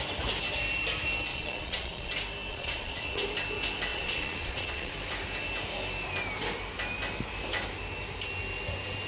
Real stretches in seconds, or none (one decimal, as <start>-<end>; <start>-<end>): 0.0-1.3; 2.1-2.5; 3.2-3.9; 4.9-9.1